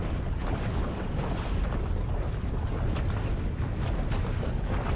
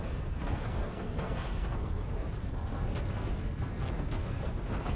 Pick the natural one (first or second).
first